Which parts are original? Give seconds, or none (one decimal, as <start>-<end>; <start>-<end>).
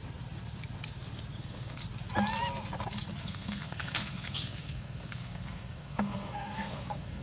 0.0-1.4; 1.8-3.2